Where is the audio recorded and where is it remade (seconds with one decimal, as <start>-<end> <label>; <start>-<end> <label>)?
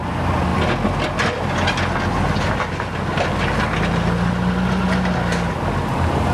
0.0-6.3 recorded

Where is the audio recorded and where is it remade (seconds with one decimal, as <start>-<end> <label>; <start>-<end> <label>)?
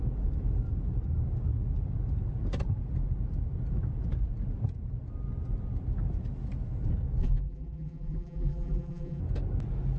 0.0-7.2 recorded; 7.2-9.2 remade; 9.2-10.0 recorded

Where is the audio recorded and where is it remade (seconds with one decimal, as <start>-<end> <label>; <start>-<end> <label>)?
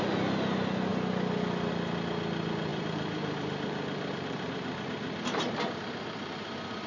0.0-2.7 recorded; 2.7-6.9 remade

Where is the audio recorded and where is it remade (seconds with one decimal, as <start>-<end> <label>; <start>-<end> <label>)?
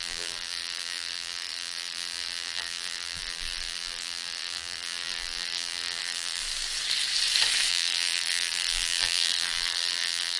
0.0-6.4 remade; 6.4-7.7 recorded; 7.7-10.4 remade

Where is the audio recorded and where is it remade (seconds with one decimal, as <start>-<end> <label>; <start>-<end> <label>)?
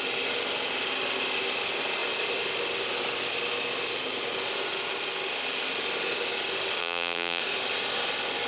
0.0-6.8 recorded; 6.8-7.4 remade; 7.4-8.5 recorded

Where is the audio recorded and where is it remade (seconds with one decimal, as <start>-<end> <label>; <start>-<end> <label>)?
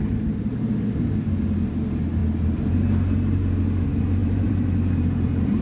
0.0-4.2 recorded; 4.2-5.6 remade